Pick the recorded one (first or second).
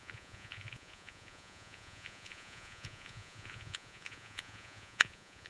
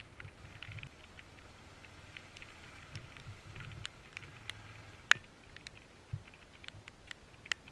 second